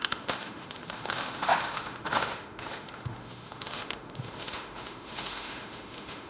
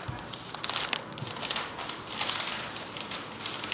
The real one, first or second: second